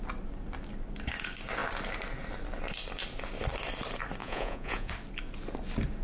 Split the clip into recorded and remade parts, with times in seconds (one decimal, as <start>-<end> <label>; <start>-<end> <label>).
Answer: 0.0-4.2 recorded; 4.2-4.9 remade; 4.9-6.0 recorded